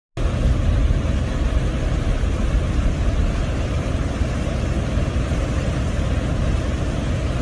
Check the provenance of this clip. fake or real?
real